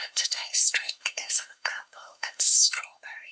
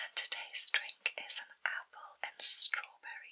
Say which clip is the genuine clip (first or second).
second